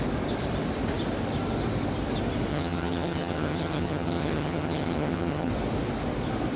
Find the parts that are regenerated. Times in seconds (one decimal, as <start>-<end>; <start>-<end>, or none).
2.5-5.5